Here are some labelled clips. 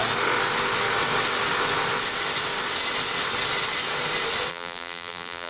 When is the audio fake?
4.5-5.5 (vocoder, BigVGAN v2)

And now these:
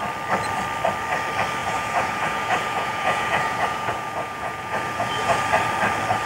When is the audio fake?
1.6-5.4 (vocoder, Vocos)